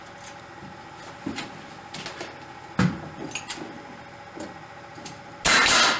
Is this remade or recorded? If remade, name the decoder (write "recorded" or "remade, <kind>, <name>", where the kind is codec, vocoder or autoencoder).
recorded